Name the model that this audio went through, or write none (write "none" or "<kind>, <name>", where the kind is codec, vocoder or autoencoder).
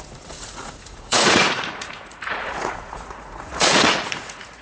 vocoder, Vocos